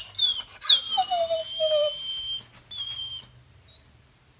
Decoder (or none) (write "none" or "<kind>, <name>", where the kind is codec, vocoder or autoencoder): none